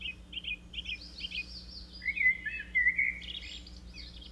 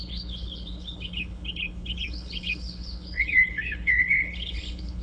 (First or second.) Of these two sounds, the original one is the first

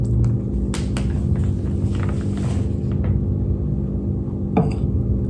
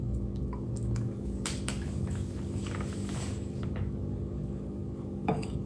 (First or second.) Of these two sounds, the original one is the first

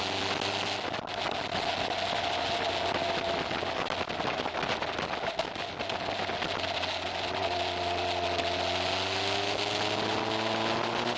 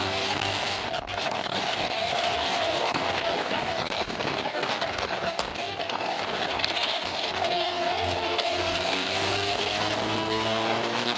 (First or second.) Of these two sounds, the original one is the first